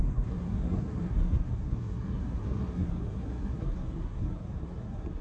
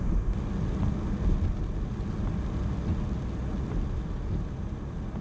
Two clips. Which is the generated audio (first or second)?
first